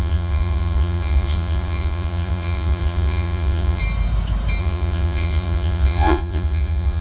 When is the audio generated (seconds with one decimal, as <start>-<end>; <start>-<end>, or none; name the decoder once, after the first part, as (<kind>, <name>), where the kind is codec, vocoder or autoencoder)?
0.0-3.8 (vocoder, Vocos); 4.6-7.0